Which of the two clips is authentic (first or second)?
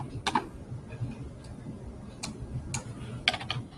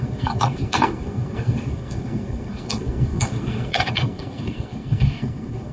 first